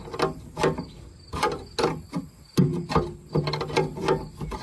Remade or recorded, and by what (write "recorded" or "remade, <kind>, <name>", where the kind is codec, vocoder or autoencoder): recorded